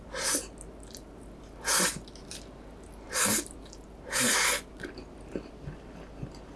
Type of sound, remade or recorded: recorded